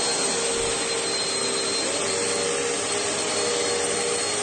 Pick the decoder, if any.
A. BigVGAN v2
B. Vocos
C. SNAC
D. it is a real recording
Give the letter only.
D